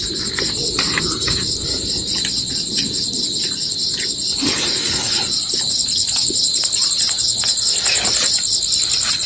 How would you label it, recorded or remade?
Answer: recorded